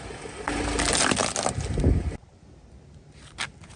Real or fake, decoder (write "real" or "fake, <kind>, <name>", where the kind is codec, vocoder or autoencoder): real